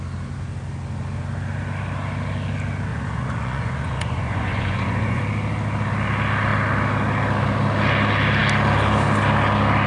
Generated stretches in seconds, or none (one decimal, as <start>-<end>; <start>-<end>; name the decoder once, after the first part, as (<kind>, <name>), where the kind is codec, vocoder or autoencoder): 2.9-5.2 (vocoder, Vocos)